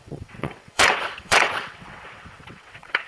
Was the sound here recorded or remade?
remade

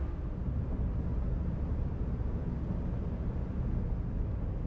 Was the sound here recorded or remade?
recorded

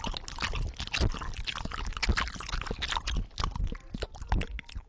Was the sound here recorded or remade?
recorded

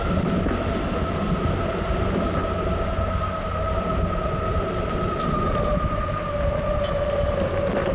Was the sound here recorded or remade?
recorded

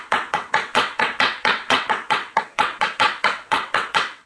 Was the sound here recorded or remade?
remade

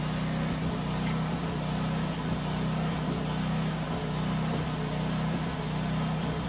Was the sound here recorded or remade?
recorded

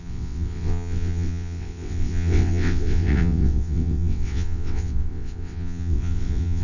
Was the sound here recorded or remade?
remade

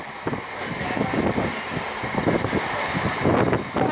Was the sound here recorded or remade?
recorded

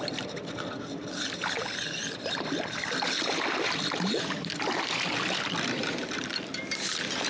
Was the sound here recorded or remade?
recorded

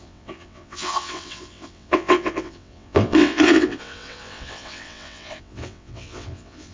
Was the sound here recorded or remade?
remade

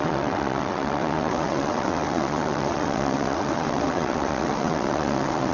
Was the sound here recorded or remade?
remade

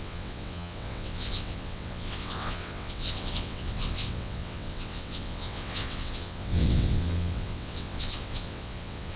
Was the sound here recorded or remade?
remade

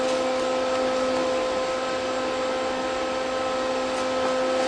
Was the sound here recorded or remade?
recorded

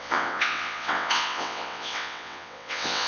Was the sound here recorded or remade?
remade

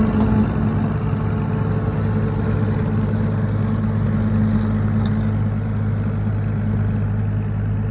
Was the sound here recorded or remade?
recorded